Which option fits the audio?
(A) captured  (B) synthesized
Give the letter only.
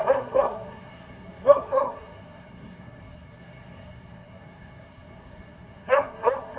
B